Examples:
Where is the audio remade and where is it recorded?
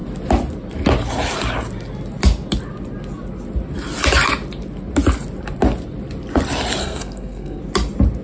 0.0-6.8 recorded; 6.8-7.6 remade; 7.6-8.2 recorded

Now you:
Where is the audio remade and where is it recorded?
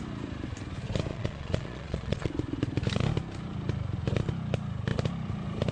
0.0-1.1 recorded; 1.1-2.3 remade; 2.3-5.7 recorded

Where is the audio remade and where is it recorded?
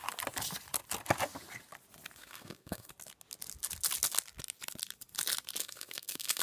0.0-2.2 recorded; 2.2-2.9 remade; 2.9-5.6 recorded; 5.6-6.4 remade